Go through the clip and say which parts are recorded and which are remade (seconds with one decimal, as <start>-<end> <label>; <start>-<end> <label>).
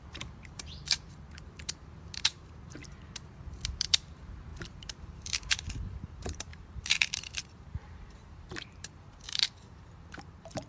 0.0-2.8 remade; 2.8-3.9 recorded; 3.9-10.7 remade